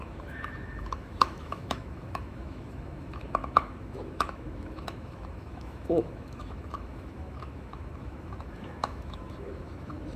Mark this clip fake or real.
fake